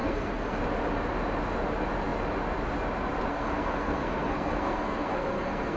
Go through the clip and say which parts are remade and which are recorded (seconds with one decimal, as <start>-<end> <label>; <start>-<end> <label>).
0.0-0.6 remade; 0.6-3.3 recorded; 3.3-5.8 remade